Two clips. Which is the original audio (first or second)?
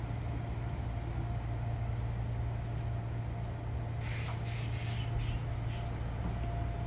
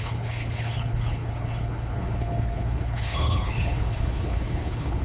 first